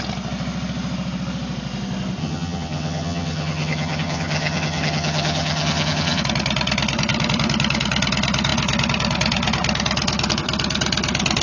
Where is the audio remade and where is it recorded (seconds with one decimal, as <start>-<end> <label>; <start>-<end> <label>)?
0.0-2.2 recorded; 2.2-6.2 remade; 6.2-11.4 recorded